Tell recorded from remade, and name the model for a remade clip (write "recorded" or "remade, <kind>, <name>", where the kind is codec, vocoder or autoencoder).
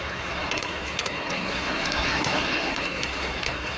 remade, codec, SNAC